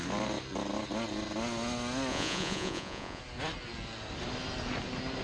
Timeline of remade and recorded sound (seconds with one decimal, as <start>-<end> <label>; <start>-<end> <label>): 0.0-2.1 recorded; 2.1-3.2 remade; 3.2-5.2 recorded